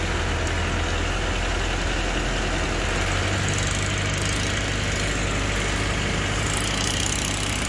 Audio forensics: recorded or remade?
recorded